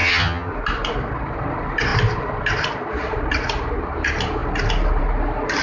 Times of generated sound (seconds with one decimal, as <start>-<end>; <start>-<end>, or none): 0.0-0.5